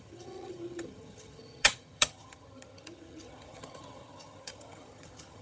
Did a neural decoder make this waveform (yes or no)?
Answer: yes